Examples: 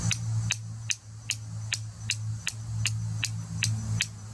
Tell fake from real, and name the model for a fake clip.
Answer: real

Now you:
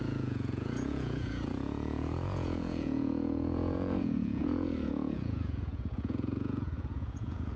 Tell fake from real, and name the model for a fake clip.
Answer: fake, vocoder, Vocos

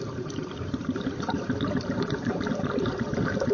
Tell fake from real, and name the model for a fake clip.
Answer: fake, vocoder, BigVGAN v2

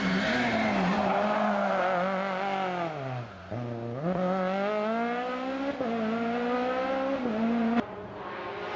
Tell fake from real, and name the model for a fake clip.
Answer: real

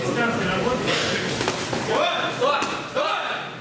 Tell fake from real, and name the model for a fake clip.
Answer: fake, vocoder, BigVGAN v2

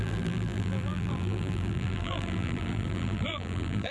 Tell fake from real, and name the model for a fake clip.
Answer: fake, vocoder, BigVGAN v2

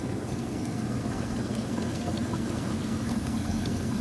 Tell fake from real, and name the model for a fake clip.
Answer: fake, codec, SNAC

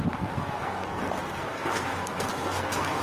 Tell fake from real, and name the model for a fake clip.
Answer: fake, codec, SNAC